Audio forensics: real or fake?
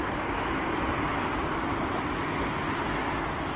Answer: real